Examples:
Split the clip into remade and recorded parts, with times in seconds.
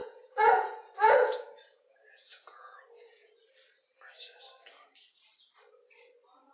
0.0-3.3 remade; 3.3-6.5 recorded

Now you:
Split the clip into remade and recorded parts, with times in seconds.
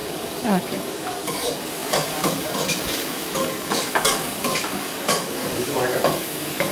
0.0-6.7 remade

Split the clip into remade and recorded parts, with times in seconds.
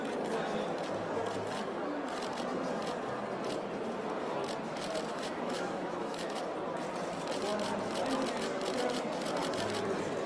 0.0-5.1 recorded; 5.1-6.4 remade; 6.4-10.3 recorded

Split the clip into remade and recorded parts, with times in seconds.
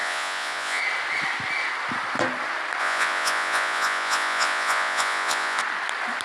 0.0-0.8 remade; 0.8-2.8 recorded; 2.8-5.6 remade; 5.6-6.2 recorded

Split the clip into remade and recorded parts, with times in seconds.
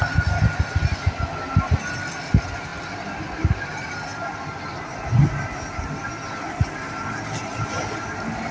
0.0-8.5 recorded